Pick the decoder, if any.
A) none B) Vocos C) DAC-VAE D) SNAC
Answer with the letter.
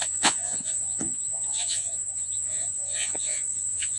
B